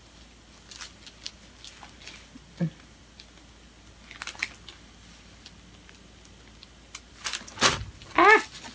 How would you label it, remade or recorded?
recorded